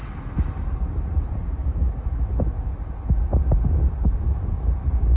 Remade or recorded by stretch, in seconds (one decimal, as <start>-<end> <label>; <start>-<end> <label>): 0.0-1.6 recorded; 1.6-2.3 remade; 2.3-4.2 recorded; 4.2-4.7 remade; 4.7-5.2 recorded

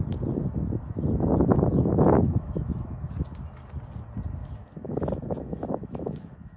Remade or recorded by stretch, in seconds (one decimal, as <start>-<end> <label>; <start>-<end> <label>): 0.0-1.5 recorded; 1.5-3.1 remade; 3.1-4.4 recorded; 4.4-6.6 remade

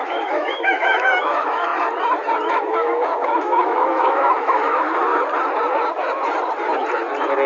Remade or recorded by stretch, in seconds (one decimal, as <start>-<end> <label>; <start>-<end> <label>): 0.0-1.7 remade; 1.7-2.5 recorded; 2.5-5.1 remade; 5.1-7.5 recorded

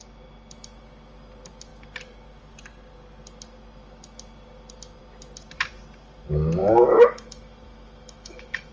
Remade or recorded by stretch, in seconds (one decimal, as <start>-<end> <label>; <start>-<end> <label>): 0.0-6.6 recorded; 6.6-8.7 remade